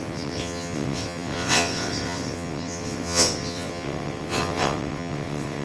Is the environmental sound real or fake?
fake